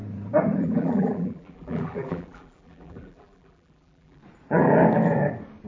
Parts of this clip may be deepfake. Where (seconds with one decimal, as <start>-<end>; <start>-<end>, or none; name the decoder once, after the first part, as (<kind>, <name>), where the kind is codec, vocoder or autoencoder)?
0.6-4.2 (vocoder, BigVGAN v2)

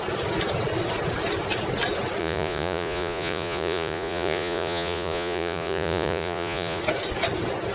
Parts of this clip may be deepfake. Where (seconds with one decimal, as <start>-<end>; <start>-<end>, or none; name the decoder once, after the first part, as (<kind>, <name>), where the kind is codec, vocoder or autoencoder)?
2.2-6.8 (vocoder, Vocos)

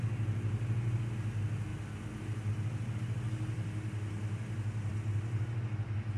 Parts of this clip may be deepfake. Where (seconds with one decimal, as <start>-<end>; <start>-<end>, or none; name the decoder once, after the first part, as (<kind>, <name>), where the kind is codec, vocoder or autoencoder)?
none